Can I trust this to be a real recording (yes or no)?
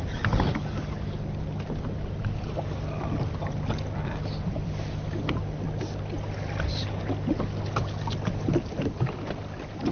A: yes